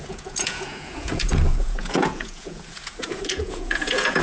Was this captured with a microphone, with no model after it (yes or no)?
no